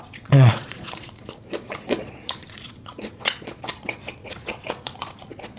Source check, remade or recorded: remade